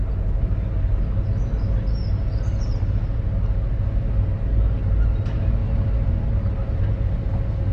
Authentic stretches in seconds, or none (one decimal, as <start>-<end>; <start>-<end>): 0.0-5.6; 6.9-7.7